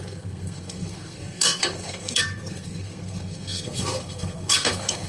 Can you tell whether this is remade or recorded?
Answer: remade